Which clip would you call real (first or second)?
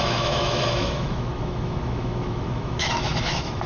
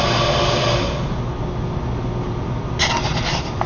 second